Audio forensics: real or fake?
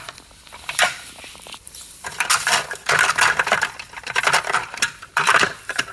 fake